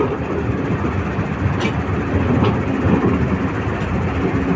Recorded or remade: recorded